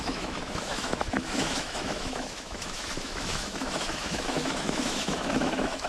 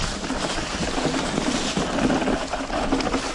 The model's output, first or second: first